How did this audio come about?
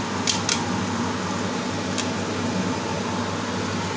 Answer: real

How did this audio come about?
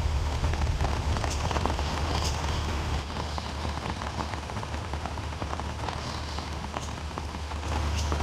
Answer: fake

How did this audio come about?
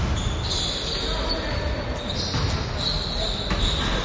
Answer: real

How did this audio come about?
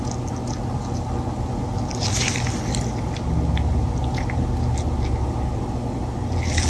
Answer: real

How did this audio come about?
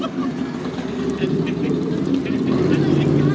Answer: real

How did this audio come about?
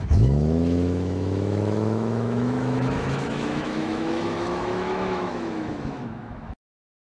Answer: fake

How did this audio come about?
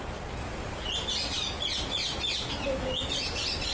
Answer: real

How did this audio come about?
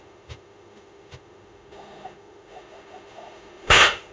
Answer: fake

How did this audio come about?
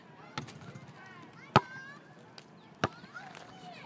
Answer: real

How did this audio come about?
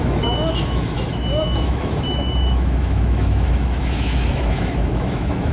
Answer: fake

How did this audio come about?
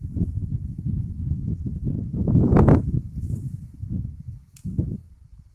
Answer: fake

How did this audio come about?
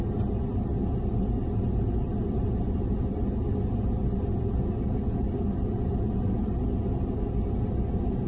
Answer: real